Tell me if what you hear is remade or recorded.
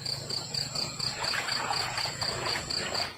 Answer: remade